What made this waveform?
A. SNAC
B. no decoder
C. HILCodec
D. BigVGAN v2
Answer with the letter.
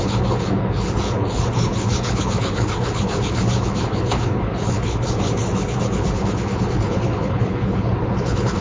C